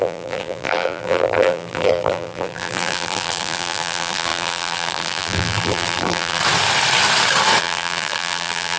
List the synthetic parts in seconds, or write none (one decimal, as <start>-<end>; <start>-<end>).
0.0-6.4; 7.6-8.8